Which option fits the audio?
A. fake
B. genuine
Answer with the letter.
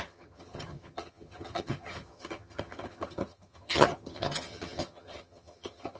A